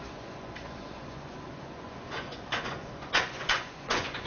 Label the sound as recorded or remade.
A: remade